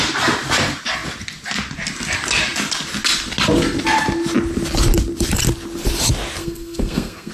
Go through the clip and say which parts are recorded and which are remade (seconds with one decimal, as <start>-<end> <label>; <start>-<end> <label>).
0.0-6.4 recorded; 6.4-7.3 remade